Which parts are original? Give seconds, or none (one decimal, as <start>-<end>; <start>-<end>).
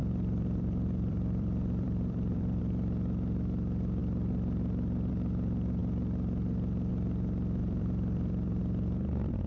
2.6-7.6; 8.6-9.5